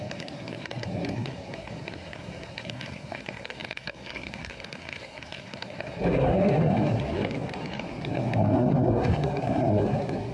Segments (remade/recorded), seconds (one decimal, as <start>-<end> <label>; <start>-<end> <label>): 0.0-10.3 remade